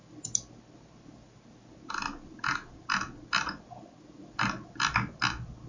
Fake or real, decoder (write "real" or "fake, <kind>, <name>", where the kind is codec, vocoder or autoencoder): real